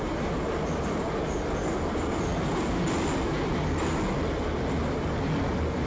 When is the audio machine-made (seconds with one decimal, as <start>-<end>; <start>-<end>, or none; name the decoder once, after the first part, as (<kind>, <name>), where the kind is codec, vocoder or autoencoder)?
none